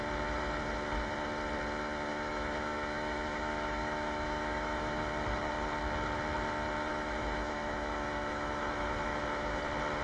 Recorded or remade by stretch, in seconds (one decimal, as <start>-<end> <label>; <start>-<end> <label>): 0.0-2.1 recorded; 2.1-5.0 remade; 5.0-6.9 recorded; 6.9-9.6 remade; 9.6-10.0 recorded